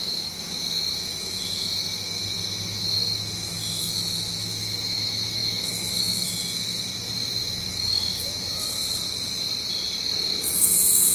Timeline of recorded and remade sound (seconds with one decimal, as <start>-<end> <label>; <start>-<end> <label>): 0.0-8.8 remade; 8.8-10.2 recorded; 10.2-11.1 remade